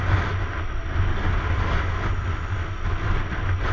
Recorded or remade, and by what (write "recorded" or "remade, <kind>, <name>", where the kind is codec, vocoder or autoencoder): recorded